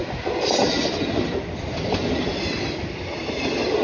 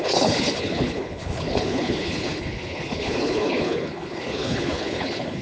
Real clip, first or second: first